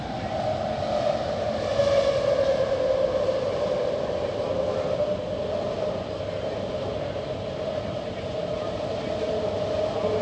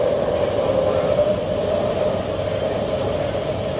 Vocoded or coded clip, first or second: second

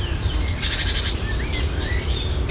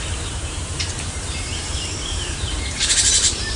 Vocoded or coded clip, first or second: second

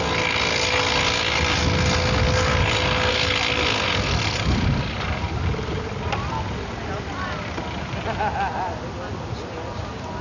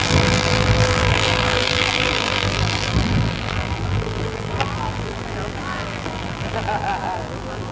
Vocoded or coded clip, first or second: second